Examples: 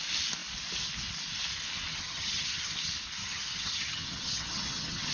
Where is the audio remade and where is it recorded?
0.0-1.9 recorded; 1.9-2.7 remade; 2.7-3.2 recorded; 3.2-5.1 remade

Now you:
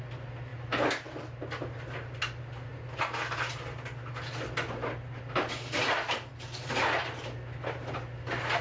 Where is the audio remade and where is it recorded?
0.0-8.6 recorded